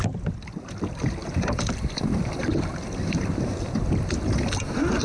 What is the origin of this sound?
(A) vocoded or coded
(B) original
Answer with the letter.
B